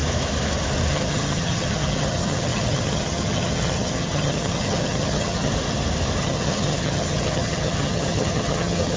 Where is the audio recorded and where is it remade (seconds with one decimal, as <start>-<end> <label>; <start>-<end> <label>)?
0.0-0.9 recorded; 0.9-5.5 remade; 5.5-6.2 recorded; 6.2-9.0 remade